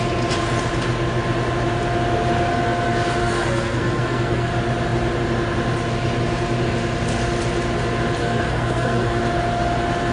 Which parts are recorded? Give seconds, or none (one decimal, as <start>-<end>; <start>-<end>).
0.0-3.2; 4.5-8.2; 9.2-10.1

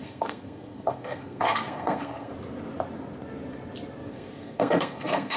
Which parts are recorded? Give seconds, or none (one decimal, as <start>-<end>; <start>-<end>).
2.3-4.1

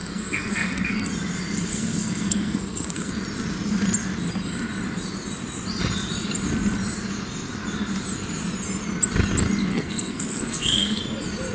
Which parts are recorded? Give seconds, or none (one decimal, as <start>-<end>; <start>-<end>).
1.1-1.7; 3.1-9.7; 11.0-11.5